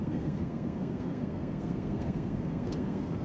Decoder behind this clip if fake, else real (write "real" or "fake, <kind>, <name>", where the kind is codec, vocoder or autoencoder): fake, codec, SNAC